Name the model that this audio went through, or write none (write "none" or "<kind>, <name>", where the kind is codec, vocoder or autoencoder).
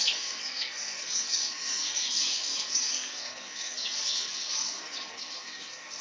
codec, SNAC